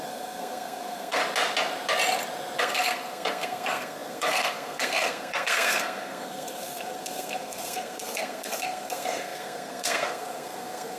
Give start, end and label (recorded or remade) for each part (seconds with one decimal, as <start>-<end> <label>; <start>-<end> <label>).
0.0-1.2 remade; 1.2-2.6 recorded; 2.6-11.0 remade